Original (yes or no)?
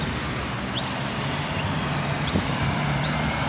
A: no